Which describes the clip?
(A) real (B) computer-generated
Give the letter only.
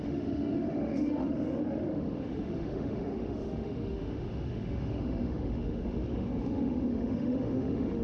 B